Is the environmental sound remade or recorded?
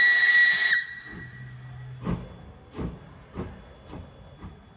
recorded